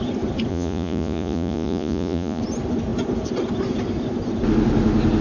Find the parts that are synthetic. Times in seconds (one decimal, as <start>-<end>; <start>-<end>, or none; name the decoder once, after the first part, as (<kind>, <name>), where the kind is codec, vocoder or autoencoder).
0.5-2.4 (vocoder, Vocos)